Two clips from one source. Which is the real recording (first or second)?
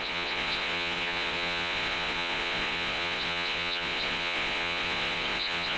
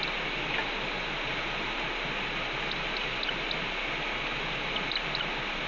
second